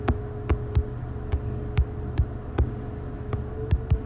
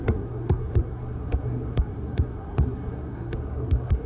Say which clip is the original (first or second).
first